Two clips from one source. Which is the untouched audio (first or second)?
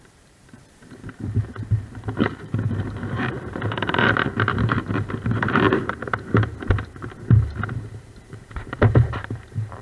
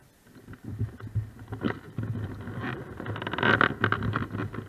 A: second